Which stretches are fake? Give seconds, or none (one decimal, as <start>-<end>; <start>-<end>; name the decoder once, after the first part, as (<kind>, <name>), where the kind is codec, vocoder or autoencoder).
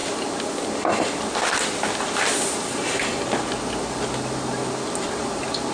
none